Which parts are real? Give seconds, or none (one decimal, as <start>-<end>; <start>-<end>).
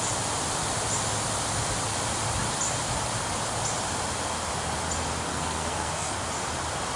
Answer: 0.0-5.3; 6.1-7.0